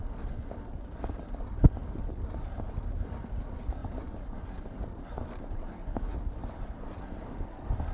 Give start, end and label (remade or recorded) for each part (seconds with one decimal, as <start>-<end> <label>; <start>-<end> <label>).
0.0-3.8 recorded; 3.8-5.6 remade; 5.6-6.1 recorded; 6.1-6.8 remade; 6.8-7.9 recorded